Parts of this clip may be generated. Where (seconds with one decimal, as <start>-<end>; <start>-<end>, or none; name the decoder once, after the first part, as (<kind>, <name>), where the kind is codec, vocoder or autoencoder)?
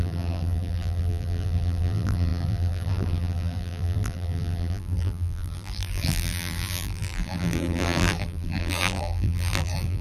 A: 0.0-10.0 (vocoder, BigVGAN v2)